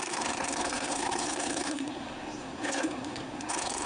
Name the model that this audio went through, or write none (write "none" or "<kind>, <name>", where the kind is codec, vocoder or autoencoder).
codec, SNAC